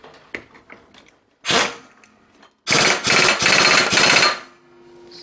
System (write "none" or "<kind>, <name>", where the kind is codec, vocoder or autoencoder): none